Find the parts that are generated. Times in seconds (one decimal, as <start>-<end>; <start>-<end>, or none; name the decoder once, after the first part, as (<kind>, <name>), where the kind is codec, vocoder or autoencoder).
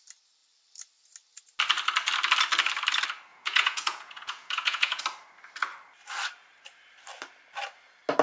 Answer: 3.3-5.0 (vocoder, Vocos)